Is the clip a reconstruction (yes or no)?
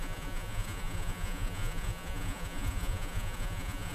yes